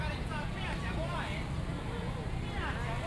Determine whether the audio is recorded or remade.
remade